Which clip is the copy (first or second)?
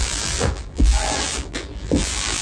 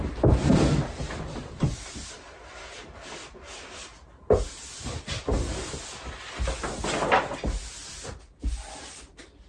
first